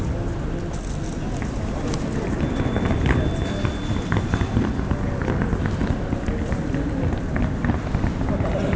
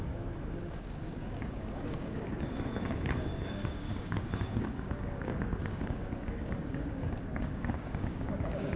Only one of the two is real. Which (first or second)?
first